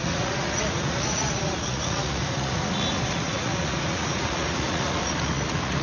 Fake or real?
fake